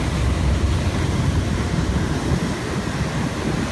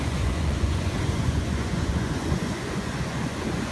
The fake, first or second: second